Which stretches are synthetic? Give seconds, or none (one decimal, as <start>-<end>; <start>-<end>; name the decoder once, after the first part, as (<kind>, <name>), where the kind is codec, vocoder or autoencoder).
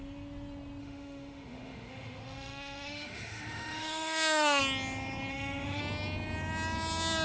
0.8-4.6 (autoencoder, DAC-VAE); 5.3-5.8